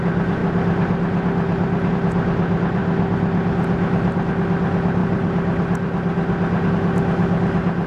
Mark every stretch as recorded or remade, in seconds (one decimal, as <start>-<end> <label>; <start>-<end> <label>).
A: 0.0-7.9 recorded